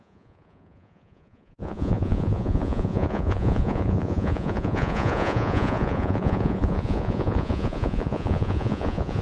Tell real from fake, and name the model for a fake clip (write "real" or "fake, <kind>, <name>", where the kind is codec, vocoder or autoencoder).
fake, vocoder, Vocos